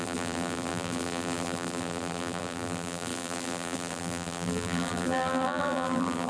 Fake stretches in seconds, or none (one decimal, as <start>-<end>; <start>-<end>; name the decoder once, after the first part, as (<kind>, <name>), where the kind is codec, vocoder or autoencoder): 0.0-6.3 (vocoder, BigVGAN v2)